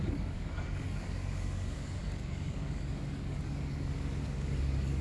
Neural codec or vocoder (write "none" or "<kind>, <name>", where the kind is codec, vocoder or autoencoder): codec, DAC